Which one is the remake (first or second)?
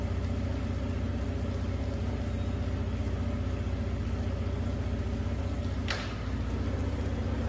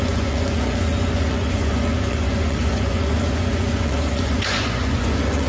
second